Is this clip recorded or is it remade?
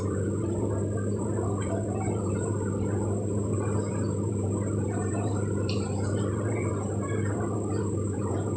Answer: remade